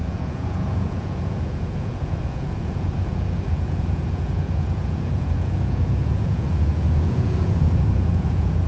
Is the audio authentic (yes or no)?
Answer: no